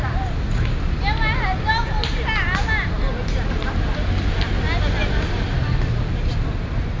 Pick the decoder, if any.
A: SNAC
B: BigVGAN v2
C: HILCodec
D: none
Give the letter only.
D